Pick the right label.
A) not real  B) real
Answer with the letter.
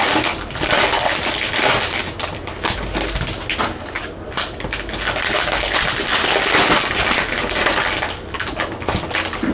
B